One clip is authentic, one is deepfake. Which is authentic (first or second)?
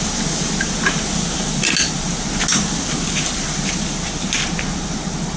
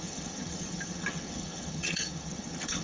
first